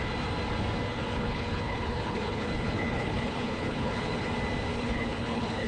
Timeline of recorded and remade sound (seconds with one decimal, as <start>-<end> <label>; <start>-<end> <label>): 0.0-0.9 recorded; 0.9-4.3 remade; 4.3-4.7 recorded; 4.7-5.7 remade